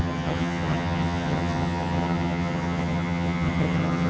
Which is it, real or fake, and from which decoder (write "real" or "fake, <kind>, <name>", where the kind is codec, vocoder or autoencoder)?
fake, vocoder, HiFi-GAN